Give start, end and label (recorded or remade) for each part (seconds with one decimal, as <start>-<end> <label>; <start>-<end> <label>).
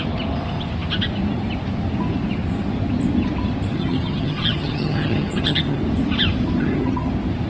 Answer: 0.0-3.7 recorded; 3.7-5.8 remade; 5.8-6.6 recorded; 6.6-7.1 remade; 7.1-7.5 recorded